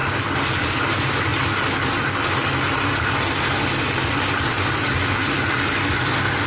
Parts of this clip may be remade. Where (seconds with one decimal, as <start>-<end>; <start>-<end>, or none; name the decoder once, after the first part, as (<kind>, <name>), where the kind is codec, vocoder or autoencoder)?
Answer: none